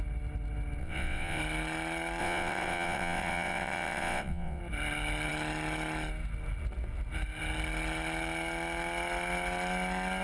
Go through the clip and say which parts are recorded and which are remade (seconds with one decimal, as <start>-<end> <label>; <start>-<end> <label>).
0.0-0.8 recorded; 0.8-1.4 remade; 1.4-2.2 recorded; 2.2-4.6 remade; 4.6-10.2 recorded